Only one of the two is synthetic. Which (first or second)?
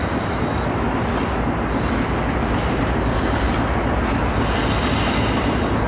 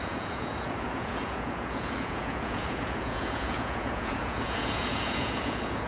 second